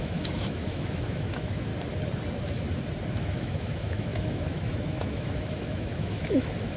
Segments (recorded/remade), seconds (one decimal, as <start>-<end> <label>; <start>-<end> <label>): 0.0-1.7 remade; 1.7-3.1 recorded; 3.1-6.8 remade